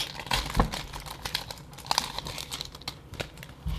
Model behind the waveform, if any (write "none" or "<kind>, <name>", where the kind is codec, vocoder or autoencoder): none